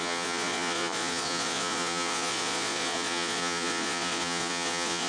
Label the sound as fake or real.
fake